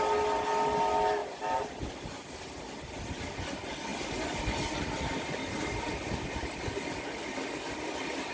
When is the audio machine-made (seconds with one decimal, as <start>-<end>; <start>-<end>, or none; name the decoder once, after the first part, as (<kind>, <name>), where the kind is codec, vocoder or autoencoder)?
1.2-2.0 (vocoder, BigVGAN v2)